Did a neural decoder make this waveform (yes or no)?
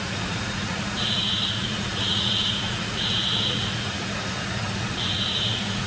yes